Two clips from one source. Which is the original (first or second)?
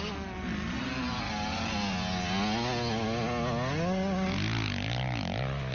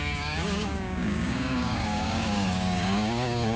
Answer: first